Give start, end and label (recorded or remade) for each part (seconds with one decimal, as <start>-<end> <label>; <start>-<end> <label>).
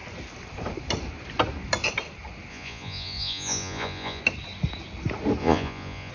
0.0-2.5 recorded; 2.5-4.2 remade; 4.2-5.4 recorded; 5.4-6.1 remade